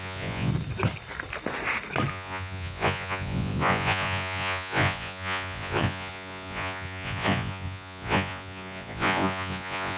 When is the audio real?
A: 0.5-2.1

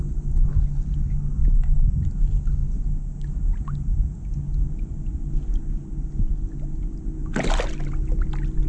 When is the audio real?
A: 0.0-8.7

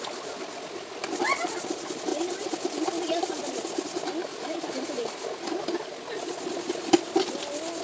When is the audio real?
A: 0.0-7.8

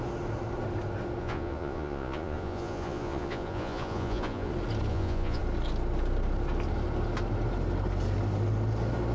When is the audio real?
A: 0.0-1.2; 4.5-4.9; 5.4-9.1

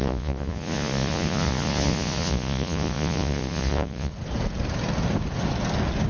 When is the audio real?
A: 4.1-6.1

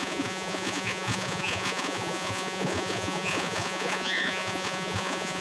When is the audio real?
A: none